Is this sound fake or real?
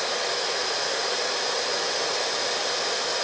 real